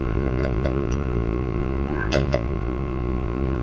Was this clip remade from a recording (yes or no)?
yes